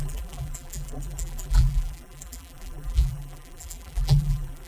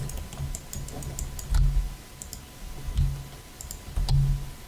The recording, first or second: second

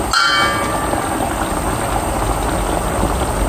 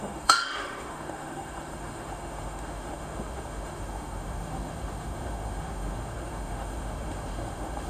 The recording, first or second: first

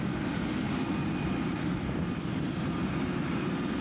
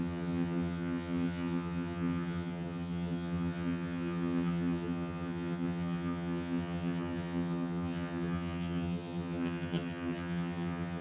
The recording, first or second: first